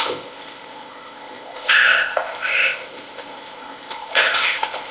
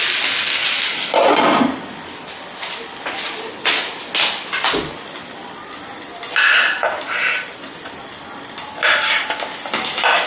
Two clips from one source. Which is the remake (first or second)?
first